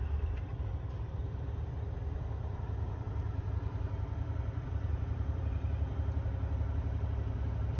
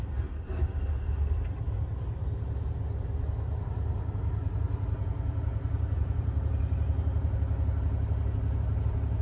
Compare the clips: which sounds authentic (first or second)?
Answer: second